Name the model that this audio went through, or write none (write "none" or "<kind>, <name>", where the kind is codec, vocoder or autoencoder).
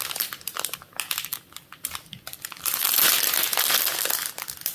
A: none